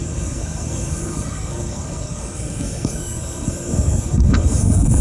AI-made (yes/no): yes